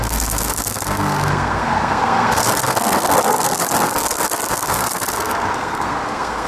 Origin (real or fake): fake